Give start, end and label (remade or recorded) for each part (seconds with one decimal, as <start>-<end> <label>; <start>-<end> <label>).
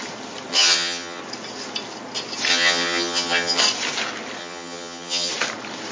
0.0-0.5 recorded; 0.5-1.2 remade; 1.2-2.5 recorded; 2.5-3.6 remade; 3.6-4.4 recorded; 4.4-5.3 remade; 5.3-5.9 recorded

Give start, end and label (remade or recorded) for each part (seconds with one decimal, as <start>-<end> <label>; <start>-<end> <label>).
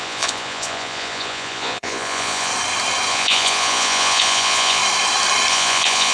0.0-2.5 remade; 2.5-3.1 recorded; 3.1-4.8 remade; 4.8-5.5 recorded; 5.5-6.1 remade